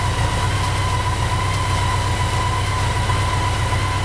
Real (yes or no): yes